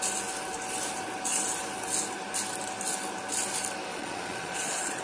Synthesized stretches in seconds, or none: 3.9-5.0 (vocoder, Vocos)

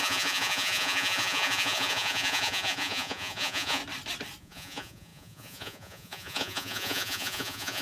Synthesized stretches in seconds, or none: 0.0-3.8 (vocoder, Vocos); 4.4-7.8

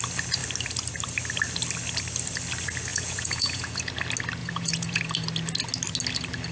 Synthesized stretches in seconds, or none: 2.9-3.9 (vocoder, Vocos); 4.4-5.0

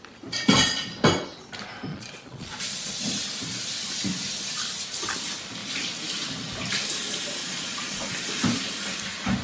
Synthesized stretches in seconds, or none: 1.9-2.9 (vocoder, Vocos); 7.4-8.1

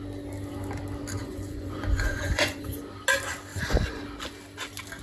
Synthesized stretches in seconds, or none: 1.2-2.8 (vocoder, Vocos); 3.5-4.0

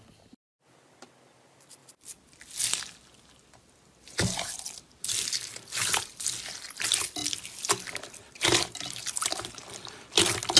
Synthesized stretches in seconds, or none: none

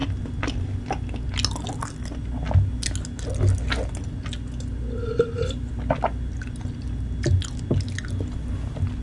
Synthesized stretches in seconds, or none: none